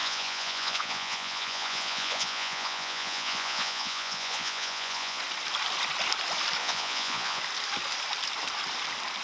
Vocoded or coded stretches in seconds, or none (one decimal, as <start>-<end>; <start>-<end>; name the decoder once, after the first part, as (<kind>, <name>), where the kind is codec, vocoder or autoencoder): 0.0-5.2 (vocoder, Vocos); 6.6-7.4